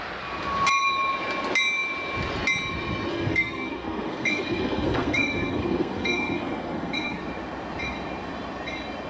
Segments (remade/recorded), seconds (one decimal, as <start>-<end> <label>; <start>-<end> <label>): 0.0-3.1 recorded; 3.1-7.2 remade; 7.2-9.1 recorded

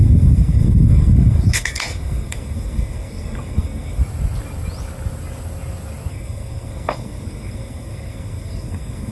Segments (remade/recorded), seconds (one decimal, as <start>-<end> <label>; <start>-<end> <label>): 0.0-4.0 remade; 4.0-6.1 recorded; 6.1-9.1 remade

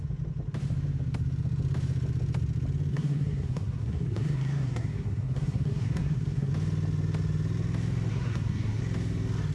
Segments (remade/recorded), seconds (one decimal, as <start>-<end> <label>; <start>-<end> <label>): 0.0-2.9 recorded; 2.9-6.5 remade; 6.5-8.1 recorded; 8.1-8.8 remade; 8.8-9.5 recorded

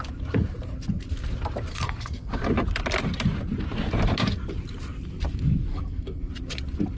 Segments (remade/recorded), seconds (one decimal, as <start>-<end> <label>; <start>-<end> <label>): 0.0-1.7 recorded; 1.7-2.3 remade; 2.3-5.7 recorded; 5.7-6.3 remade; 6.3-7.0 recorded

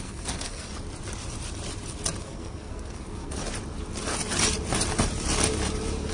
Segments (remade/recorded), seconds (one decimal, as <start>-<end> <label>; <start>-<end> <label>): 0.0-0.7 remade; 0.7-2.2 recorded; 2.2-3.4 remade; 3.4-6.1 recorded

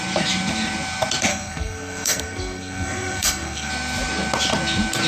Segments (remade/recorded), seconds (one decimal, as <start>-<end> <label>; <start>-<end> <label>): 0.0-1.3 recorded; 1.3-3.7 remade; 3.7-5.1 recorded